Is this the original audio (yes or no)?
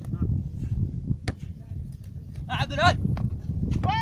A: yes